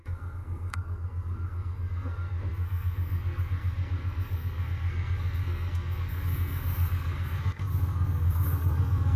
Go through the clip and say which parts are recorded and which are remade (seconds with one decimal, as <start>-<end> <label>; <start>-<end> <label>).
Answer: 0.0-9.2 remade